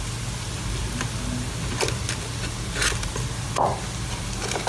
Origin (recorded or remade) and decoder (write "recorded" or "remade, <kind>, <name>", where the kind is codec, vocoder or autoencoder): recorded